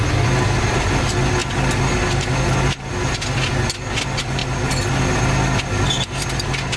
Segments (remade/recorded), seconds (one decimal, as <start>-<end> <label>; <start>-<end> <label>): 0.0-6.8 recorded